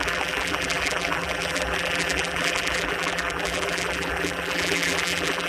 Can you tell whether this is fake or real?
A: fake